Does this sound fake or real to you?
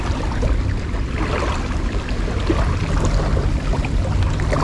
real